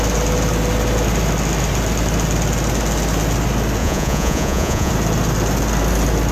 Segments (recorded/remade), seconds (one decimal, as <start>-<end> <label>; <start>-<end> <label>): 0.0-3.8 recorded; 3.8-4.9 remade; 4.9-6.3 recorded